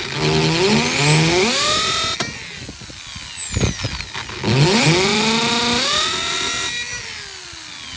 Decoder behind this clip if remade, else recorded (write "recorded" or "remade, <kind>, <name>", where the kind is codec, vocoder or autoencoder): recorded